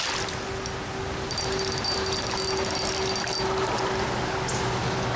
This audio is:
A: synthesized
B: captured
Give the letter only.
B